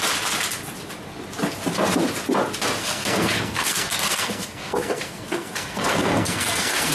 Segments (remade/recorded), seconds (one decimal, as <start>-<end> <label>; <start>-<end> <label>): 0.0-2.8 recorded; 2.8-6.9 remade